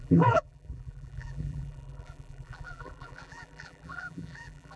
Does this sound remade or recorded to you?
remade